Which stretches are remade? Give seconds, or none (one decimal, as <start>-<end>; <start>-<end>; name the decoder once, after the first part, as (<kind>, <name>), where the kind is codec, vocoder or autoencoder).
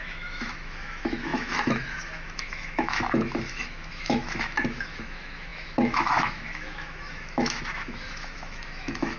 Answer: 0.0-9.2 (autoencoder, DAC-VAE)